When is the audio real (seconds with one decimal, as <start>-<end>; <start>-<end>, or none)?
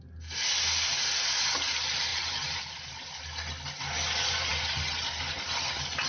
0.0-2.1; 2.7-6.1